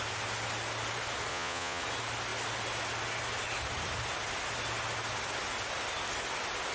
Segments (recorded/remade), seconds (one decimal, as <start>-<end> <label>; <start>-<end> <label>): 0.0-1.3 recorded; 1.3-1.8 remade; 1.8-6.7 recorded